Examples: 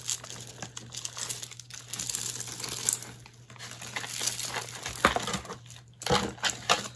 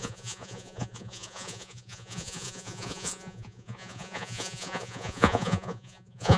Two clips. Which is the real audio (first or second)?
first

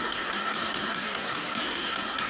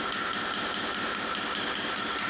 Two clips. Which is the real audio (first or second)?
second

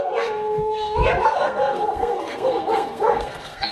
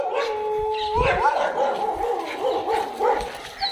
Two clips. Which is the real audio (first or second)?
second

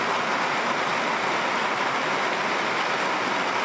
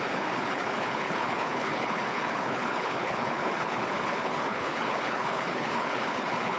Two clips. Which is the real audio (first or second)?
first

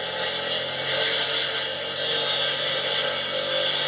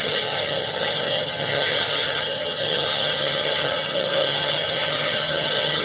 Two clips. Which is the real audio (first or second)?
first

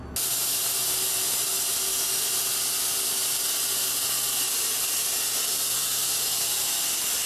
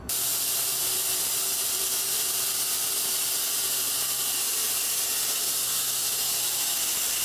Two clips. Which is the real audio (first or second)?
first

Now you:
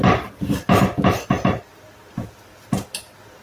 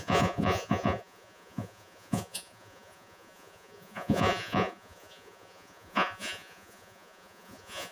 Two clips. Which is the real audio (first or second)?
first